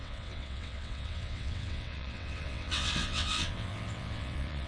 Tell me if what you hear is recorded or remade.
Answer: remade